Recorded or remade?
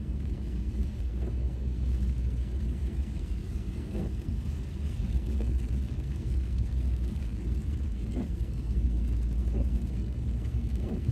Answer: remade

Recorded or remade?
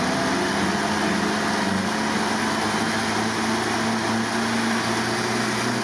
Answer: recorded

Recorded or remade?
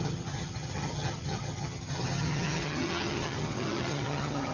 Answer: remade